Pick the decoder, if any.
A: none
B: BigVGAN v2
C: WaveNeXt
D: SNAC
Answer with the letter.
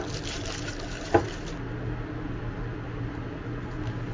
A